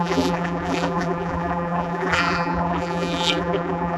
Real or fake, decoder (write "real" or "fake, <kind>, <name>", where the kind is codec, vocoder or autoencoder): fake, vocoder, BigVGAN v2